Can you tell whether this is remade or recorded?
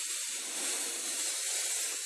recorded